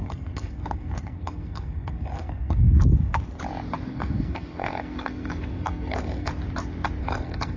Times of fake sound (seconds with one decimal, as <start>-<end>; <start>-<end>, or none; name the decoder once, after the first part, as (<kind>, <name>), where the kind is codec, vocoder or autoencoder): 0.0-2.8 (codec, SNAC); 3.9-6.3; 7.0-7.6